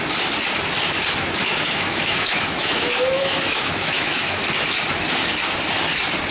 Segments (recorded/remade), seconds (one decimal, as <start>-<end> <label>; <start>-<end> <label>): 0.0-1.5 recorded; 1.5-4.4 remade; 4.4-6.3 recorded

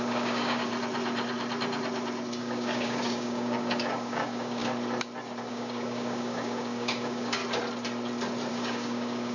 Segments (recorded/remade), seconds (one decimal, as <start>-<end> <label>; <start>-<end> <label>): 0.0-0.7 remade; 0.7-2.4 recorded; 2.4-4.6 remade; 4.6-5.5 recorded; 5.5-7.4 remade; 7.4-8.5 recorded; 8.5-9.3 remade

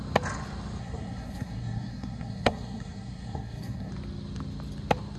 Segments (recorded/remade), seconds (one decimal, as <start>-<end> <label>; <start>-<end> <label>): 0.0-0.8 recorded; 0.8-3.9 remade; 3.9-5.2 recorded